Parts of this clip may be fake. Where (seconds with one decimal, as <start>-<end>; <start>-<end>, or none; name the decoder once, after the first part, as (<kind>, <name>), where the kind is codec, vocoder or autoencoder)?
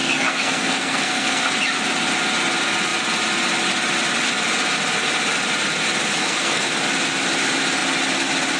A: 0.0-1.5 (codec, SNAC); 6.2-6.7